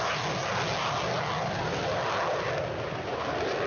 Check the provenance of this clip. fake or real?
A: real